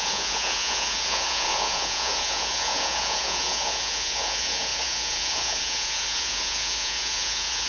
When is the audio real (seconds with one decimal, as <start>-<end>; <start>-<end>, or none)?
none